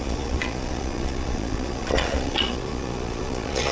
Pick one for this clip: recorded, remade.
remade